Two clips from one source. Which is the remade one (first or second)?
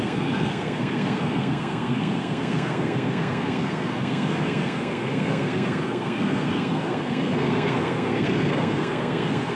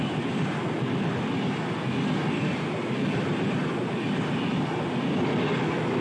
first